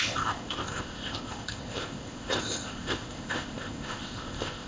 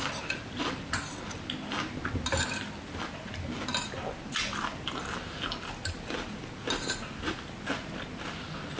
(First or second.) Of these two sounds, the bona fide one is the second